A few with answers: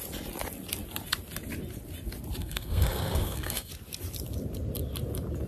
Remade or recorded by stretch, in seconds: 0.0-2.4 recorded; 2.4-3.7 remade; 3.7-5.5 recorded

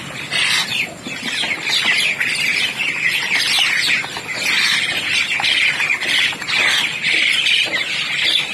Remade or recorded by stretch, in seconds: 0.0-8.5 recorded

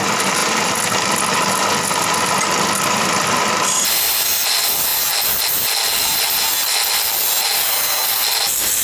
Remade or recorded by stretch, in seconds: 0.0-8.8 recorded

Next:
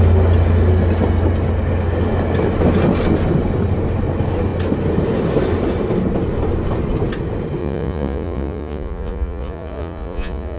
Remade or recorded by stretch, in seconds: 0.0-7.6 recorded; 7.6-10.6 remade

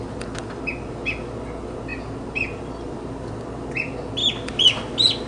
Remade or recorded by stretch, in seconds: 0.0-5.3 recorded

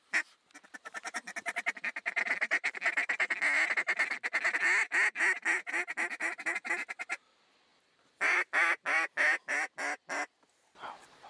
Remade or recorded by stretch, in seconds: 0.0-11.3 recorded

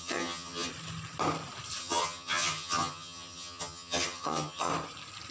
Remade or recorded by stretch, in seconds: 0.0-0.7 remade; 0.7-1.8 recorded; 1.8-4.7 remade; 4.7-5.3 recorded